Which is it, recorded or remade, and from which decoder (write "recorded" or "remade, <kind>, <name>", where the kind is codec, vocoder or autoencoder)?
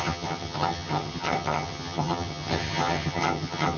remade, vocoder, HiFi-GAN